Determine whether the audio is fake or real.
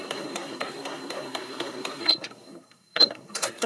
fake